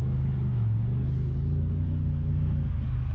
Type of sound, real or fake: fake